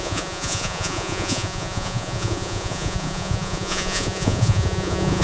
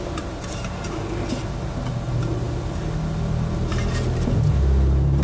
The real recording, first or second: second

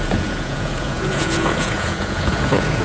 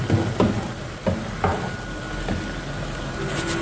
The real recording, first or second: second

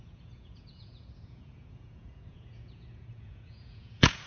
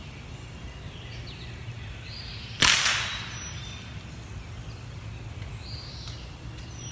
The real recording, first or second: second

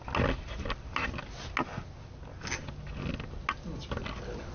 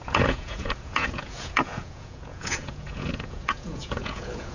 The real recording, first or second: first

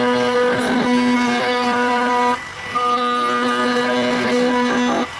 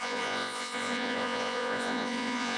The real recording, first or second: first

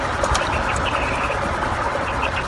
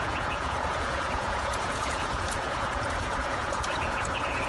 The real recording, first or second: first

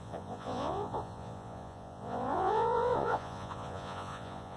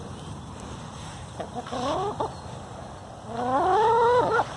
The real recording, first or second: second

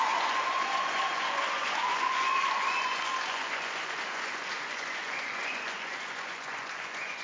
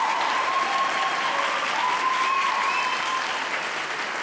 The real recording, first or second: second